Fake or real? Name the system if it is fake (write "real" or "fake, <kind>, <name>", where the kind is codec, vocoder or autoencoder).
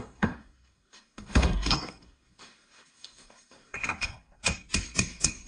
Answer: fake, codec, SNAC